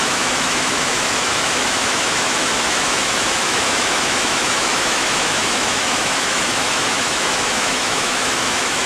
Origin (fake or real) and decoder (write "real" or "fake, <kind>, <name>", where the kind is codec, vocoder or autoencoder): fake, autoencoder, DAC-VAE